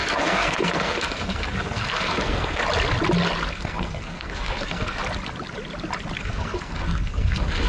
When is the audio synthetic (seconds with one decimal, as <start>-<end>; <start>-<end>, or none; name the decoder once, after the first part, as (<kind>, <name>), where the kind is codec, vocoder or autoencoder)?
0.0-2.6 (codec, SNAC); 3.5-5.0; 6.2-7.7

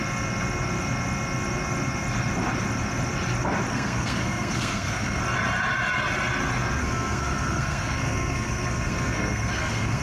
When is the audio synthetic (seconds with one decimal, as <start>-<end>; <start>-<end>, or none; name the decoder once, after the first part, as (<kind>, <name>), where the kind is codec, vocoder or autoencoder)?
3.7-5.2 (codec, SNAC); 6.8-10.0

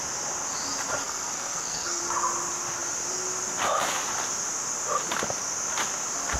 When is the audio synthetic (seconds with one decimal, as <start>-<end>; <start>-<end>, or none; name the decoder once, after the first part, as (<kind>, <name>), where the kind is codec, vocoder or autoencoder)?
1.0-2.0 (codec, SNAC)

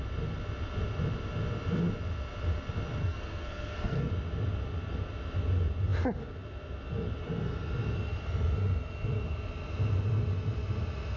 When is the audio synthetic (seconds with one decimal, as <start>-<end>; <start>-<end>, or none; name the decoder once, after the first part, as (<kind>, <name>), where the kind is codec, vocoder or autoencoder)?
3.0-4.1 (codec, SNAC)